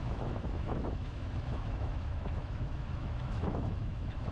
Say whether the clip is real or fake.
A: fake